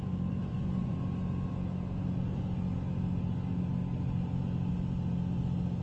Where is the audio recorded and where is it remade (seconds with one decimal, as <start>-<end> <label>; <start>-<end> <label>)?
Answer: 0.0-0.5 recorded; 0.5-1.0 remade; 1.0-5.8 recorded